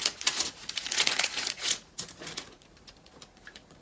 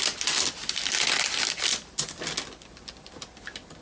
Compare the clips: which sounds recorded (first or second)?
second